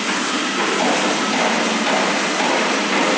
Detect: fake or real real